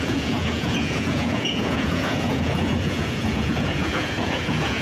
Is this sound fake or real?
fake